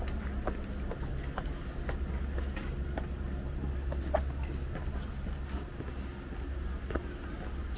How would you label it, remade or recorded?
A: recorded